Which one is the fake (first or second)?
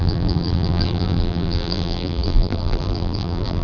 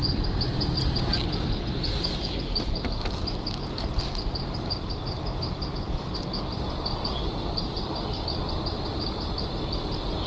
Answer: first